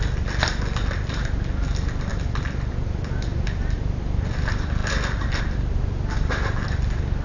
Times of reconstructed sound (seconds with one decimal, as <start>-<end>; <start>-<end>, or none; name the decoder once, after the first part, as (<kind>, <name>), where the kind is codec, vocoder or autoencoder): none